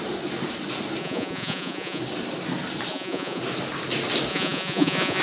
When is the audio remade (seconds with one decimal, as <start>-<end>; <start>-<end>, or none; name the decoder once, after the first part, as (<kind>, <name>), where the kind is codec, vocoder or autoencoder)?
1.0-2.0 (vocoder, Vocos); 2.9-3.4; 4.3-5.2